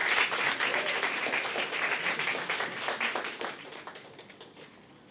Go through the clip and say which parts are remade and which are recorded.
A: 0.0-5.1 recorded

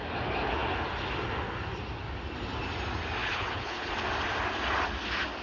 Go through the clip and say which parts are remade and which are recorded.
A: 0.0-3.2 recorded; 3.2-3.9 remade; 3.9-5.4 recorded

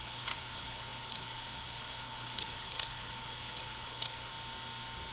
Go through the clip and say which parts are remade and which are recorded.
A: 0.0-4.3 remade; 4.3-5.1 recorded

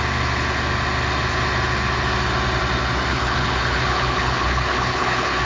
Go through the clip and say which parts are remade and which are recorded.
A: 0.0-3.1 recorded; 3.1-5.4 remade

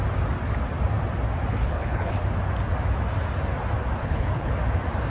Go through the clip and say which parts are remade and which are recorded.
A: 0.0-1.5 recorded; 1.5-2.2 remade; 2.2-4.0 recorded; 4.0-4.5 remade; 4.5-5.1 recorded

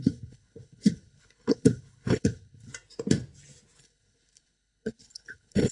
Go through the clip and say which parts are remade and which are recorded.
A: 0.0-2.7 remade; 2.7-3.8 recorded; 3.8-5.7 remade

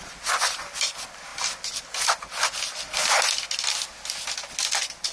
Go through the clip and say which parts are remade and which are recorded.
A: 0.0-5.1 recorded